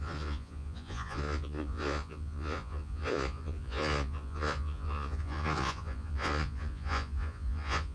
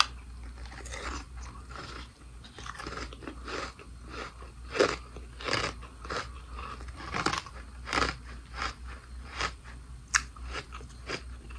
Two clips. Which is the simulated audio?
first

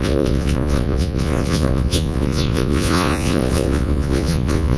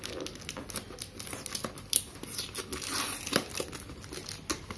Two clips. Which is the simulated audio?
first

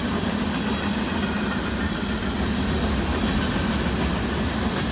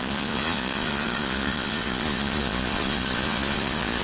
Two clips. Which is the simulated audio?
second